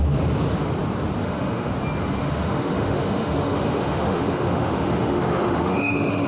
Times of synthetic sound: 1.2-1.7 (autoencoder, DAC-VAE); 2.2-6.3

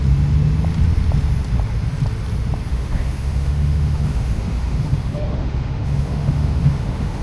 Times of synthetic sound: 2.7-7.2 (autoencoder, DAC-VAE)

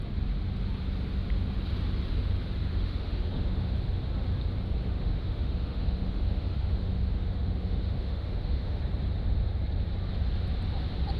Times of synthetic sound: 2.6-3.6 (autoencoder, DAC-VAE); 4.8-8.8

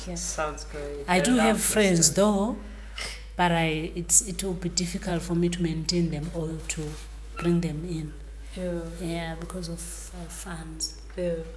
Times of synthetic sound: 1.0-4.3 (autoencoder, DAC-VAE); 6.5-10.1

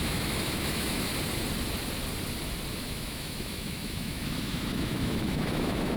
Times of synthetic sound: 0.0-1.1 (autoencoder, DAC-VAE); 2.7-6.0